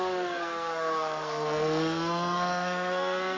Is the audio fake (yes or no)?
yes